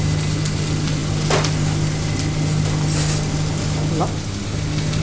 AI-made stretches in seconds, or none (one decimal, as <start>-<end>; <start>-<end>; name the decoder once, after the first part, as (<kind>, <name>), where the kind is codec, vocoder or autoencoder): none